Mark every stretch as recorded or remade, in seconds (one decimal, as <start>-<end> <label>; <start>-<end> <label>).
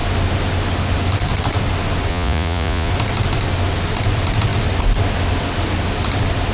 0.0-2.1 recorded; 2.1-2.9 remade; 2.9-6.5 recorded